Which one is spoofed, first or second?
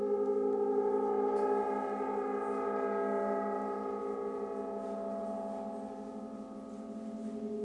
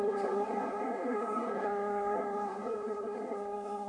second